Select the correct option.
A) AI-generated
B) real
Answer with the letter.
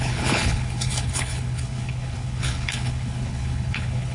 A